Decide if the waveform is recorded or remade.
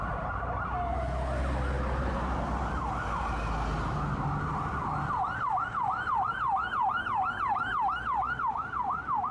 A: recorded